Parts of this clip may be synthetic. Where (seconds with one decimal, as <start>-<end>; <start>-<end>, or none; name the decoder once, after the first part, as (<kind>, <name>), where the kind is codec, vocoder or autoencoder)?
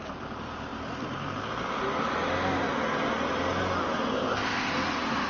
4.1-4.7 (codec, ZipCodec)